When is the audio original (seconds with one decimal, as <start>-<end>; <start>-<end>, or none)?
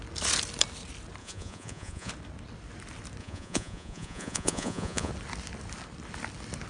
0.0-1.2; 2.1-3.2; 5.1-6.7